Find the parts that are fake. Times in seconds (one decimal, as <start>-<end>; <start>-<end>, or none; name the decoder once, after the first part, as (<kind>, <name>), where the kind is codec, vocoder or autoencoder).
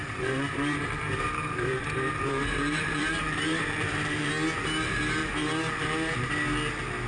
0.0-4.3 (vocoder, BigVGAN v2); 5.2-6.3